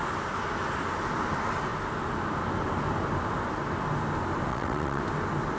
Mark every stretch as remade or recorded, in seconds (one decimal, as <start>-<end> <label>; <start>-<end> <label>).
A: 0.0-4.5 recorded; 4.5-5.0 remade; 5.0-5.6 recorded